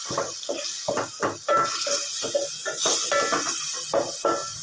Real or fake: real